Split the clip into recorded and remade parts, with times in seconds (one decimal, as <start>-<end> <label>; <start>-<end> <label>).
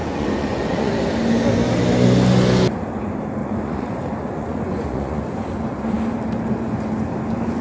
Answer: 0.0-0.9 remade; 0.9-3.4 recorded; 3.4-5.2 remade; 5.2-7.6 recorded